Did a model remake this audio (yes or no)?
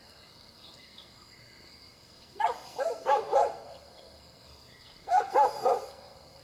yes